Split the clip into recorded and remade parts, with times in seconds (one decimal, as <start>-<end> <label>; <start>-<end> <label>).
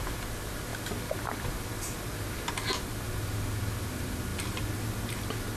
0.0-5.6 recorded